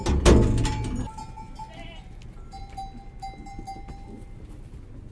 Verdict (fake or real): real